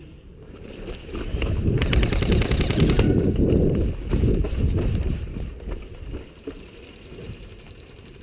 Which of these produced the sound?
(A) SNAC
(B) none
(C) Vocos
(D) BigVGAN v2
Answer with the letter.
D